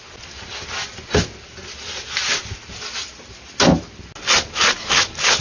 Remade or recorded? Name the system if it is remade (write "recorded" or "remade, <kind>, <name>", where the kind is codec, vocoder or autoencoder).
recorded